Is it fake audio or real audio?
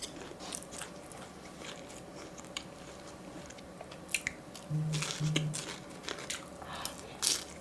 real